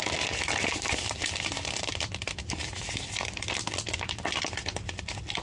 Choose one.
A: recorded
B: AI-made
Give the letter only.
A